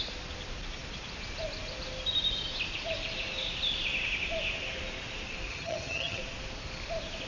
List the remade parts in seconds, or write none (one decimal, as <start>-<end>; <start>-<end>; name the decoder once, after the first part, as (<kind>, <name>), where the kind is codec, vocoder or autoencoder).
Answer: 5.5-6.2 (vocoder, HiFi-GAN)